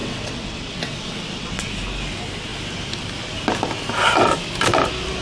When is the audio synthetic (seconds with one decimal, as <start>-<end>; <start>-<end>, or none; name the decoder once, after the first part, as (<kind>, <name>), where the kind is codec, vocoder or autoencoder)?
0.0-1.7 (vocoder, WaveNeXt)